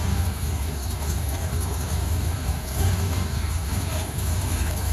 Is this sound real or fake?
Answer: fake